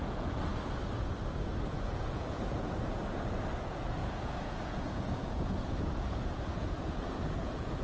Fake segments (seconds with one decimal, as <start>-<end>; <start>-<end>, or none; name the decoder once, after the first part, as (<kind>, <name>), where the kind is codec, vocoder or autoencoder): 0.0-0.5 (vocoder, Vocos); 1.7-7.8